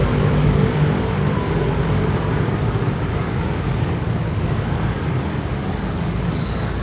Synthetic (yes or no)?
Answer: yes